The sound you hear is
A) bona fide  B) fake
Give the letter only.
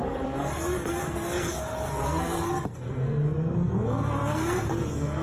B